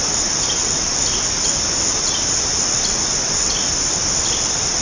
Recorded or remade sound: recorded